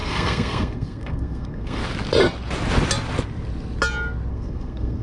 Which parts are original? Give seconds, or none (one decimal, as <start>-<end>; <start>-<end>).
1.8-4.3